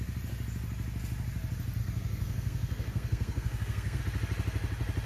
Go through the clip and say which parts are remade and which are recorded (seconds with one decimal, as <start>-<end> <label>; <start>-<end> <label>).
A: 0.0-1.8 recorded; 1.8-4.0 remade; 4.0-5.1 recorded